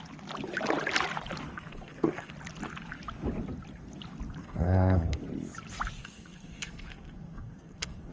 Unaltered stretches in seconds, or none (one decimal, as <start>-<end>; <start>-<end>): 0.0-1.5; 2.3-4.4; 5.2-6.0